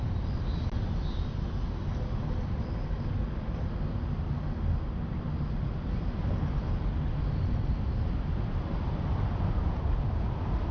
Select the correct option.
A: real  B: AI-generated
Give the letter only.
A